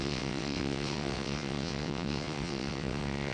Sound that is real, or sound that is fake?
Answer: fake